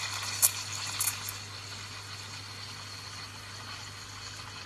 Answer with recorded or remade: recorded